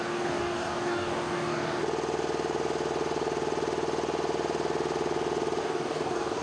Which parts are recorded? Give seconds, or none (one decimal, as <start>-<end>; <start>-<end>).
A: 1.8-5.6